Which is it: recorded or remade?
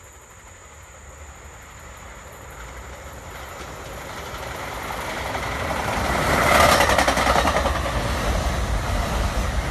recorded